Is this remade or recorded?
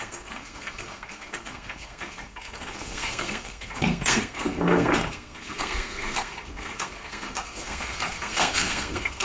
remade